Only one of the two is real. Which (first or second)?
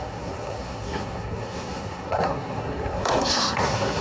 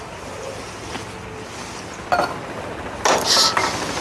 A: second